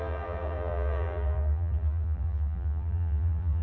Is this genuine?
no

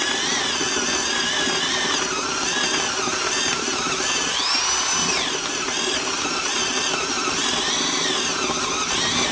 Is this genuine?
yes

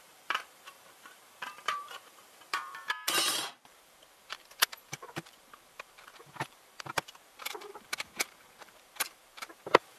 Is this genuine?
no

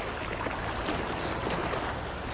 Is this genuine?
yes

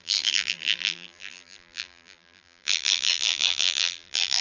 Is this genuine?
no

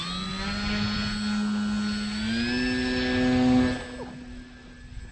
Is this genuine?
yes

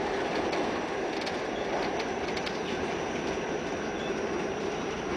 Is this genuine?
no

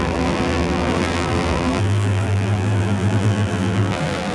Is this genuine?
no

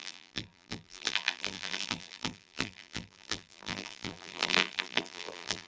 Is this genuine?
no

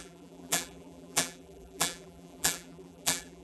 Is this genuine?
no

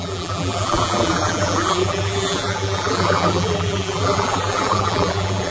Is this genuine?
no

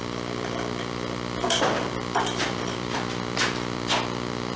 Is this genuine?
no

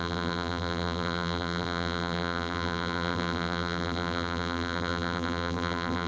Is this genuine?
no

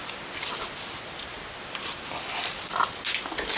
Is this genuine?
yes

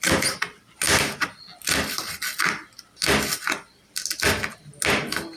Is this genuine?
yes